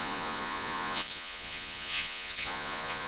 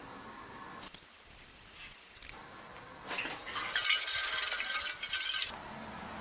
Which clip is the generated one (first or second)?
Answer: first